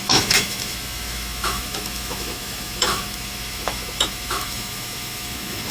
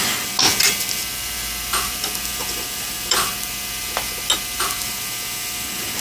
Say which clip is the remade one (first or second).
first